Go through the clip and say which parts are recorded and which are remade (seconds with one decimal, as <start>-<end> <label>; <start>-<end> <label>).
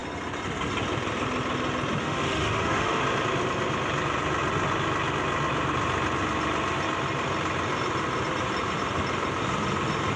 0.0-2.0 recorded; 2.0-3.0 remade; 3.0-10.2 recorded